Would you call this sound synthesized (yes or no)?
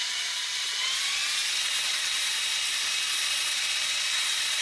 yes